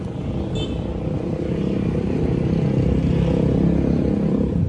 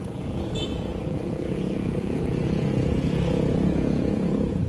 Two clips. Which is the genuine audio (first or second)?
first